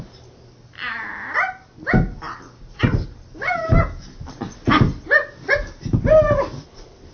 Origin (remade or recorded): recorded